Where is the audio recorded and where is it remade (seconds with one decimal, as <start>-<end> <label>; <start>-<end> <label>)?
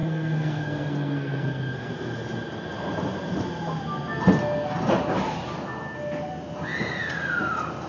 0.0-1.9 remade; 1.9-7.9 recorded